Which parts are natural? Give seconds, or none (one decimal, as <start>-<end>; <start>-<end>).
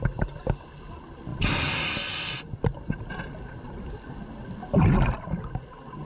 0.0-6.0